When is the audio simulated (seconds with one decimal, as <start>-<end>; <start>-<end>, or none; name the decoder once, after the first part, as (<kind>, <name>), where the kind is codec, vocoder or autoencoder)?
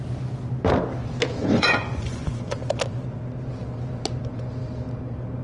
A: 1.4-2.6 (vocoder, Vocos)